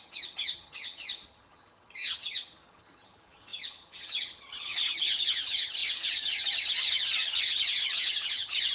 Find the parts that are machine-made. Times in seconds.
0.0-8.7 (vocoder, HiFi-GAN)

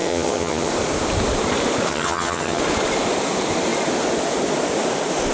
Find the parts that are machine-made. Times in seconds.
0.0-0.7 (vocoder, HiFi-GAN); 1.9-2.6

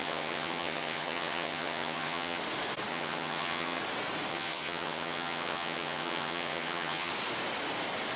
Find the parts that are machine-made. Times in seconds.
0.0-2.4 (vocoder, HiFi-GAN); 2.9-3.8; 4.3-7.1

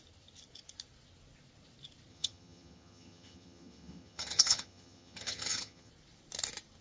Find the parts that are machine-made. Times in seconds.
2.1-5.9 (vocoder, HiFi-GAN)

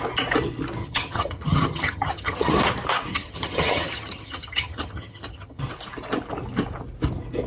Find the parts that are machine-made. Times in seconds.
0.8-2.6 (vocoder, HiFi-GAN); 3.1-5.6

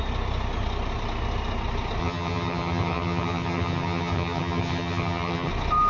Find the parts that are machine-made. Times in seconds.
2.0-5.5 (vocoder, HiFi-GAN)

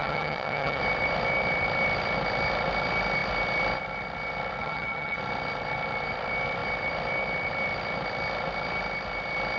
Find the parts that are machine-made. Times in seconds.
0.0-0.8 (vocoder, HiFi-GAN); 4.6-5.2

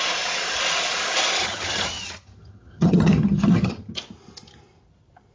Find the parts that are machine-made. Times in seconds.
1.4-3.9 (vocoder, HiFi-GAN)